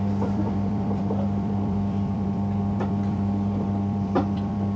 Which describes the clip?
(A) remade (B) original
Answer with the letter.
A